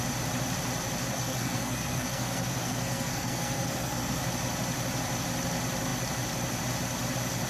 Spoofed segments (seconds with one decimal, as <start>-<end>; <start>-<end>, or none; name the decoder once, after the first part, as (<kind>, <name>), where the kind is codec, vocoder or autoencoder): 1.1-4.2 (codec, SNAC)